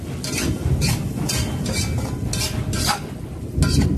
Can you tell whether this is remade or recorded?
recorded